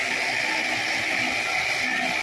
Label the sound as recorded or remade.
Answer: recorded